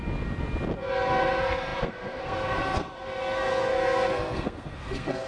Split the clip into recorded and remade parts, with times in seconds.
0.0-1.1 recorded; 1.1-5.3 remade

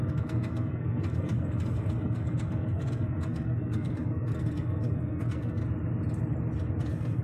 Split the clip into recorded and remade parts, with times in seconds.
0.0-5.6 remade; 5.6-6.8 recorded; 6.8-7.2 remade

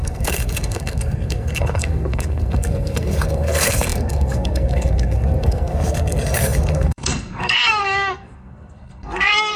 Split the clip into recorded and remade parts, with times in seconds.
0.0-9.6 remade